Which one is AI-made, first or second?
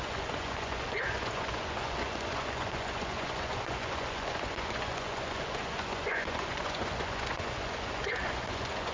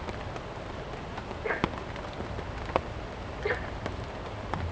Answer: first